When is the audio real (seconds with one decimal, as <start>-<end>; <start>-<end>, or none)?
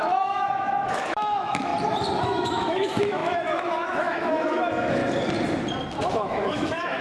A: 1.7-2.2; 5.0-6.1